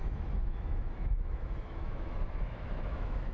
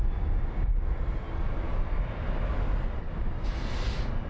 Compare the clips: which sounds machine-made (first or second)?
first